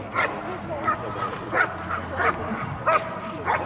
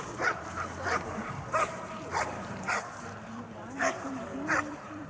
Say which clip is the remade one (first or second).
second